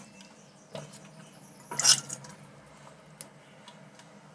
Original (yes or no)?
yes